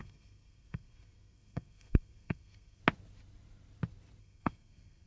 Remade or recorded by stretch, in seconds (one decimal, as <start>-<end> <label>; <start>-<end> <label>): 0.0-2.8 remade; 2.8-4.2 recorded; 4.2-5.1 remade